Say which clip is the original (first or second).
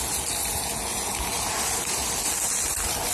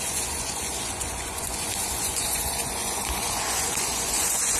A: first